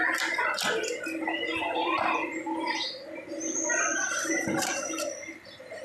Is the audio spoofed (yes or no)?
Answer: no